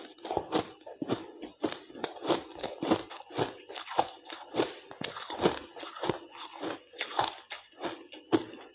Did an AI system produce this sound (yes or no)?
no